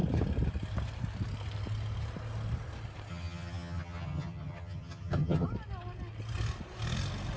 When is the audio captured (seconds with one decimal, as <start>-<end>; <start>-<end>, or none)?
0.0-3.1; 5.5-7.4